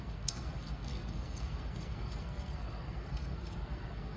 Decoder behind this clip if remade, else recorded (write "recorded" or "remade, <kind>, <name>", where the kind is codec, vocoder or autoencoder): remade, codec, SNAC